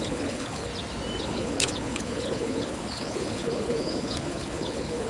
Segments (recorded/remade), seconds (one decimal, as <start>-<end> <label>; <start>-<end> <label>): 0.0-0.7 remade; 0.7-1.2 recorded; 1.2-5.1 remade